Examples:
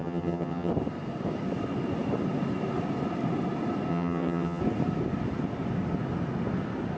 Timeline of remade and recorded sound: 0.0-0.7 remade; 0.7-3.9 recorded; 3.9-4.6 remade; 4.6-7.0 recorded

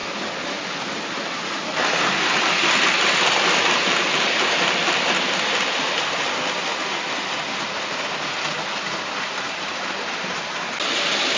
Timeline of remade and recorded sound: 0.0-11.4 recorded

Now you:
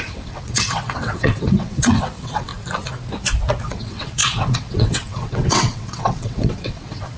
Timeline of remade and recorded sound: 0.0-2.5 remade; 2.5-3.6 recorded; 3.6-7.2 remade

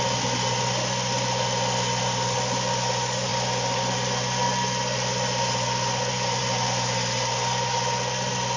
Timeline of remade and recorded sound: 0.0-8.6 recorded

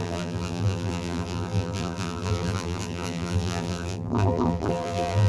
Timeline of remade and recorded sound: 0.0-5.3 remade